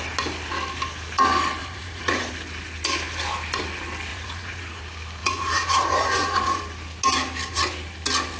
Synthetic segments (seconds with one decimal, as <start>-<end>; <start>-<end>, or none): 1.6-2.3; 4.1-4.8; 5.2-6.6